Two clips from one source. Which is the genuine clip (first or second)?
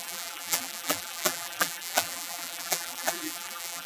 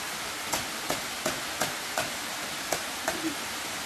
second